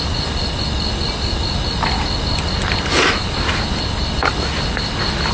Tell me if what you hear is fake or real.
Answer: real